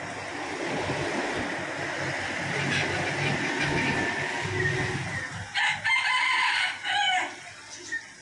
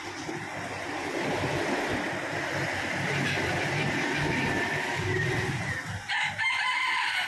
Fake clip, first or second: second